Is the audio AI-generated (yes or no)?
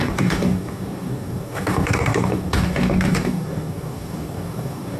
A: yes